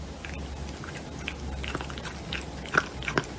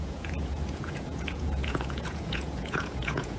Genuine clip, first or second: first